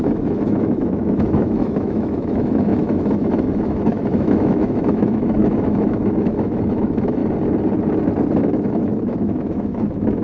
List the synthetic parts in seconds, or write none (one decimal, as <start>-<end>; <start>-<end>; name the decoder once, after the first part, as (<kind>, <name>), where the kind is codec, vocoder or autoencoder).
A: 0.0-7.2 (autoencoder, DAC-VAE); 8.4-10.2